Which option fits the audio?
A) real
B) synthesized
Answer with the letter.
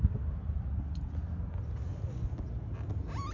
A